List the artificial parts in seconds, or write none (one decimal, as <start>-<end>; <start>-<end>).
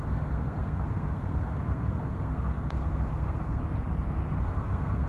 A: 0.0-3.6; 4.4-5.1